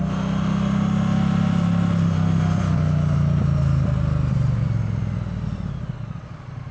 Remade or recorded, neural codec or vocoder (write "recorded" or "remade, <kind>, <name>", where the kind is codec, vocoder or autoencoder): recorded